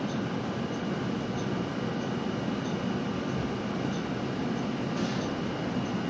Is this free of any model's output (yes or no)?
yes